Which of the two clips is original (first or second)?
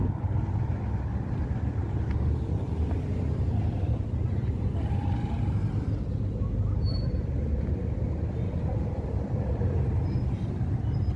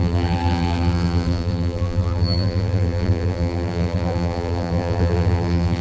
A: first